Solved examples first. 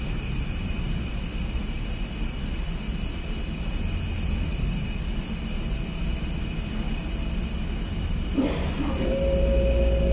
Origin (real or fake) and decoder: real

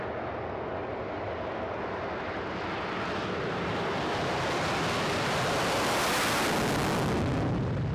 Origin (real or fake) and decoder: real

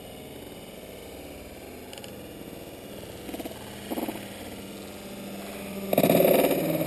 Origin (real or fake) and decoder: real